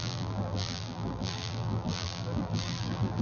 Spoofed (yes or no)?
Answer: yes